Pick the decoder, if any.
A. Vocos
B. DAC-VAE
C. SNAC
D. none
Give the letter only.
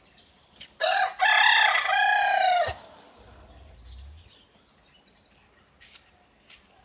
D